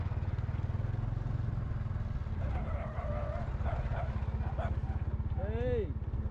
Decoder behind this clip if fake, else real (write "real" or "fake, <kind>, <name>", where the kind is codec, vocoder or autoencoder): real